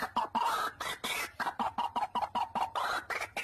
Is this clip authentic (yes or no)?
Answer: yes